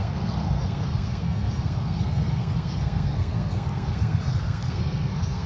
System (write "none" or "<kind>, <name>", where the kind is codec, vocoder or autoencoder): codec, SNAC